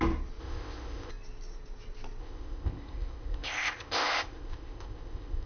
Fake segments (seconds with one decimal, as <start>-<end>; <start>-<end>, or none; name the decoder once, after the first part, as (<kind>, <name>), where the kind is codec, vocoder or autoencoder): 0.4-1.1 (codec, ZipCodec); 2.2-5.5